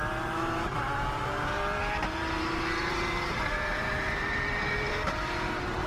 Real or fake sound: fake